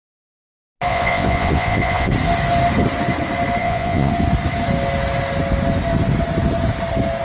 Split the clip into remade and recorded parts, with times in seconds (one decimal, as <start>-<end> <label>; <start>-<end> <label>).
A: 0.0-0.9 recorded; 0.9-2.1 remade; 2.1-3.6 recorded; 3.6-4.1 remade; 4.1-7.2 recorded